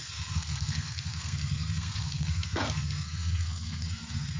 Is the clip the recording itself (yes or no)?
no